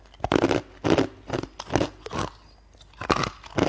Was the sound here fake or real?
real